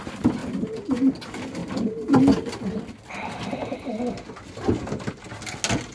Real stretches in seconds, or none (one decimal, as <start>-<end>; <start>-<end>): 0.0-0.4; 1.1-1.6; 5.1-5.9